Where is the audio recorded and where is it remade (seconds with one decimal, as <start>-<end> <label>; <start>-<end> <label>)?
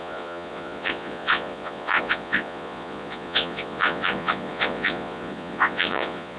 0.0-6.4 remade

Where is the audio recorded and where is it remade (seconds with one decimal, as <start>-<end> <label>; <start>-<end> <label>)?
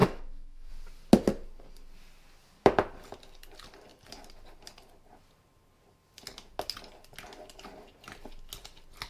0.0-0.7 remade; 0.7-9.1 recorded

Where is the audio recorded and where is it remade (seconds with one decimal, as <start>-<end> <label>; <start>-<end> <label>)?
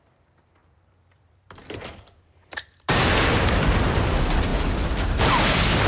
0.0-0.6 recorded; 0.6-4.1 remade; 4.1-5.9 recorded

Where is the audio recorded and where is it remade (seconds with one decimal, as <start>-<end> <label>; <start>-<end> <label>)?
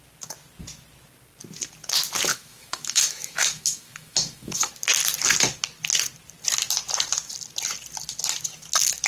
0.0-2.3 recorded; 2.3-4.7 remade; 4.7-9.1 recorded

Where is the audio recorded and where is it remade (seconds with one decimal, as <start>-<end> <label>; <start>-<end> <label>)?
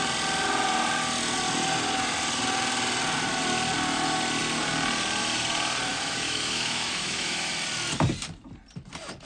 0.0-5.9 recorded; 5.9-7.5 remade; 7.5-9.3 recorded